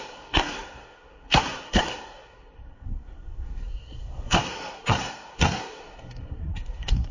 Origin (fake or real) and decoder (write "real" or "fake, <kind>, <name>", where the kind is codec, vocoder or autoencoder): fake, codec, SNAC